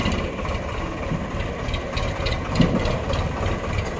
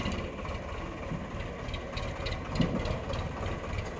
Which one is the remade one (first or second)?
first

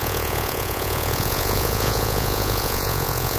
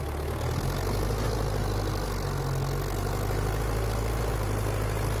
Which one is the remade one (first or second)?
first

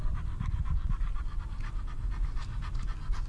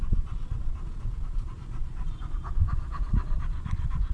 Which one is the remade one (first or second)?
second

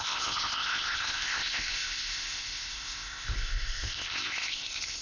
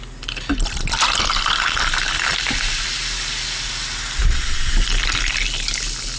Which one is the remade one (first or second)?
first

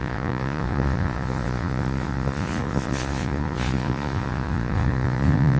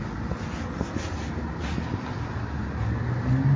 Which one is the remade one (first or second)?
first